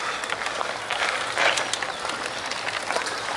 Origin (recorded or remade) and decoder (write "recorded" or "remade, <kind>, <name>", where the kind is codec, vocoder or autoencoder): recorded